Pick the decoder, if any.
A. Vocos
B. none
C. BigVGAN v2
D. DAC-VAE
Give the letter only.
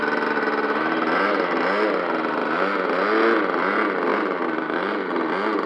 B